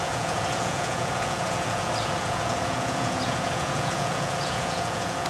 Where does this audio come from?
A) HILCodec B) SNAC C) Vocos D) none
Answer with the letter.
C